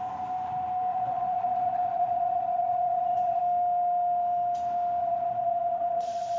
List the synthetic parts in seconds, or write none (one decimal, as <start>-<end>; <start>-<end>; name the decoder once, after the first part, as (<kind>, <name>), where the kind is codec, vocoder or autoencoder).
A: 0.9-3.4 (vocoder, Vocos); 5.0-6.4